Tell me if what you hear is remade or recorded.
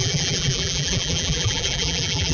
remade